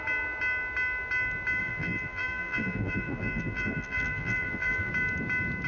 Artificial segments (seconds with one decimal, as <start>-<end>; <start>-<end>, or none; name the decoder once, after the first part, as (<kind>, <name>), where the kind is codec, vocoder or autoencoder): 1.6-4.9 (vocoder, BigVGAN v2)